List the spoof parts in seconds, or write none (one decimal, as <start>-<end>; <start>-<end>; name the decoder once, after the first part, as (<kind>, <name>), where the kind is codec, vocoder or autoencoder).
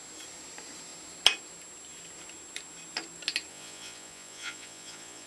3.5-5.3 (vocoder, Vocos)